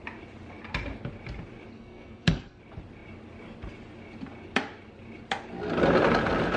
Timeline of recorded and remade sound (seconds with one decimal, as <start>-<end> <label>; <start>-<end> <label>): 0.0-1.7 recorded; 1.7-2.6 remade; 2.6-6.6 recorded